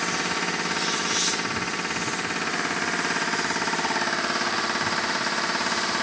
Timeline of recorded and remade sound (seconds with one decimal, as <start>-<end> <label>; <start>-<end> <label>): 0.0-2.5 recorded; 2.5-6.0 remade